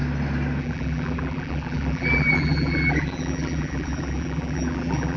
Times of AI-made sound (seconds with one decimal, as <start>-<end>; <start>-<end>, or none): 0.6-5.2